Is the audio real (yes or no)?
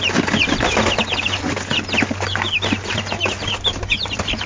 yes